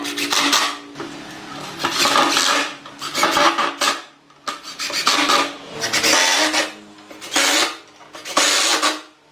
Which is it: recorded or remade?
recorded